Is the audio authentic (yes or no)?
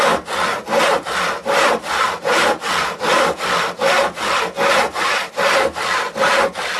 yes